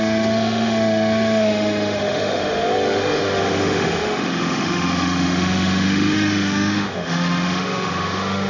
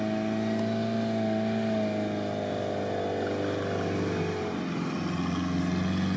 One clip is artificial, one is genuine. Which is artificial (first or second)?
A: first